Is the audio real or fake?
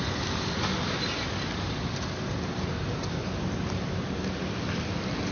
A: real